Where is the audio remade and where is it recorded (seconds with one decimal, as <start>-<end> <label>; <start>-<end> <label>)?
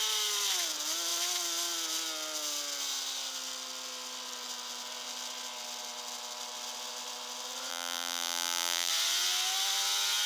0.0-7.7 recorded; 7.7-8.9 remade; 8.9-10.3 recorded